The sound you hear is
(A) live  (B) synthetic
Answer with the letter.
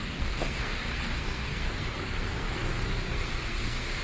B